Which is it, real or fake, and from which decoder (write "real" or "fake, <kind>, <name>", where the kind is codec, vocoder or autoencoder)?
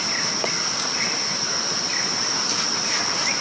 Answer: real